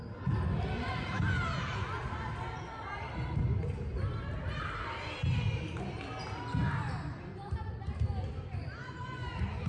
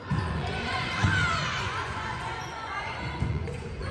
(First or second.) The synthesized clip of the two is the second